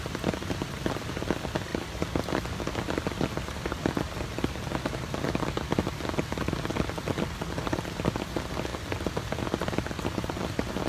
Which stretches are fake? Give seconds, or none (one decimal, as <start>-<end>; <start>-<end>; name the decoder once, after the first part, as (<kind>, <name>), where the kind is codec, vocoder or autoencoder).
none